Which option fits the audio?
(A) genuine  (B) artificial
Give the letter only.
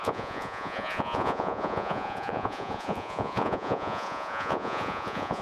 B